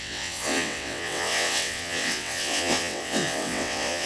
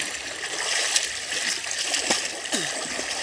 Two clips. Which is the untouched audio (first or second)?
second